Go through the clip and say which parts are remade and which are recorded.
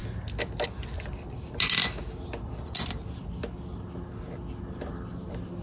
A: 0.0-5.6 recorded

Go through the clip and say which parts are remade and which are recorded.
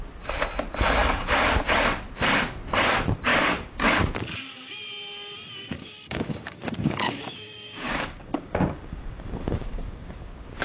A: 0.0-3.3 recorded; 3.3-3.9 remade; 3.9-5.7 recorded; 5.7-10.6 remade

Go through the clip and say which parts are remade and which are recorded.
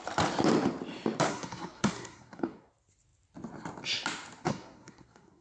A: 0.0-1.3 recorded; 1.3-2.7 remade; 2.7-4.5 recorded; 4.5-5.4 remade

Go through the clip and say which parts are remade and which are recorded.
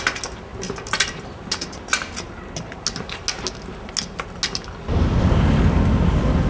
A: 0.0-6.5 recorded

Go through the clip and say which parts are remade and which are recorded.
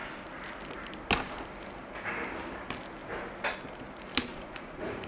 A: 0.0-4.3 recorded; 4.3-5.1 remade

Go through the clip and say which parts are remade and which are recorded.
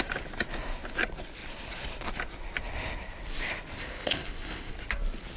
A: 0.0-3.8 recorded; 3.8-4.7 remade; 4.7-5.4 recorded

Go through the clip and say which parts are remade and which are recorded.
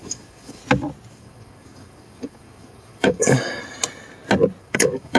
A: 0.0-0.6 remade; 0.6-1.1 recorded; 1.1-3.6 remade; 3.6-4.6 recorded; 4.6-5.2 remade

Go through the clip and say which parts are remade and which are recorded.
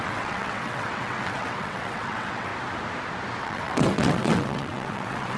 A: 0.0-2.5 remade; 2.5-3.4 recorded; 3.4-5.4 remade